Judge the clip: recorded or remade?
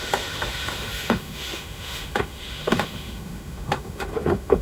remade